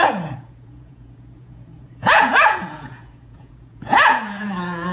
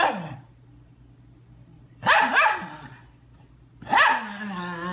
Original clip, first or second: second